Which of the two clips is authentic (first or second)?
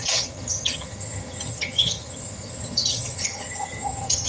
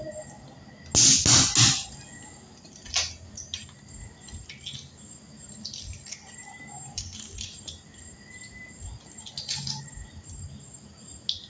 second